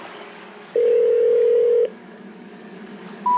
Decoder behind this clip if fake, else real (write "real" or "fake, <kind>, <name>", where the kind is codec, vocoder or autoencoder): fake, codec, DAC